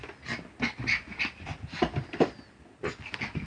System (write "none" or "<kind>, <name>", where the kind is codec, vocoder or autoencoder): none